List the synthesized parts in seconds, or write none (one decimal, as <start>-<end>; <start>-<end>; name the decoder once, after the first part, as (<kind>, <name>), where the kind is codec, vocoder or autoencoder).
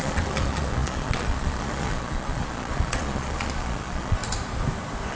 0.0-4.2 (vocoder, Vocos)